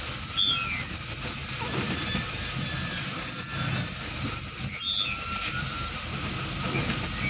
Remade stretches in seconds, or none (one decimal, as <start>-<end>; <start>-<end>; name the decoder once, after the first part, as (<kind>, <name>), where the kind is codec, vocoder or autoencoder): none